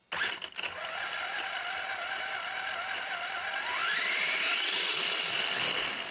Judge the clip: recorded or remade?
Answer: recorded